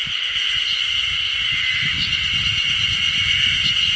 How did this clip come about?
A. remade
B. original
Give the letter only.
B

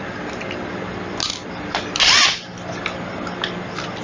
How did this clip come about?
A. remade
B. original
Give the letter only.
B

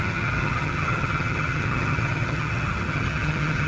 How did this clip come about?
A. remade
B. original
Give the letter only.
A